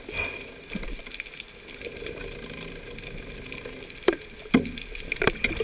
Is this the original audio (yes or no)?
yes